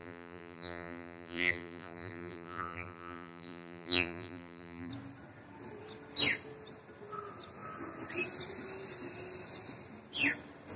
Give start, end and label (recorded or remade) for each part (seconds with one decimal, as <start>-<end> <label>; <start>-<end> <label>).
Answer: 0.0-4.9 remade; 4.9-10.8 recorded